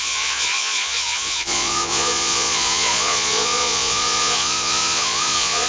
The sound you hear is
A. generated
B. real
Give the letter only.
A